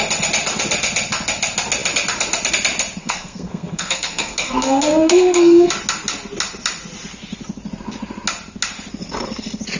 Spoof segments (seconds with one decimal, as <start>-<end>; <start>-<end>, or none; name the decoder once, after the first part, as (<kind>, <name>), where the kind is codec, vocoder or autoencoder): 3.0-5.7 (codec, SNAC)